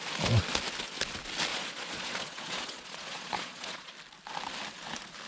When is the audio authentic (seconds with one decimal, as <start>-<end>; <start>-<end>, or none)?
0.0-1.5; 3.9-5.3